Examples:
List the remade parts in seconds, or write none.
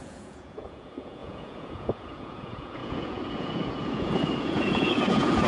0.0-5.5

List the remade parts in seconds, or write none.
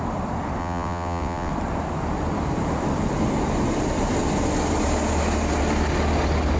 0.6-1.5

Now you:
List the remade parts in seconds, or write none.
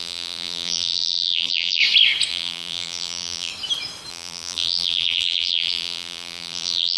0.0-1.8; 2.3-3.5; 4.1-7.0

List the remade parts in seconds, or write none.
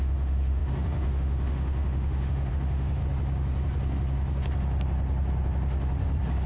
0.0-3.0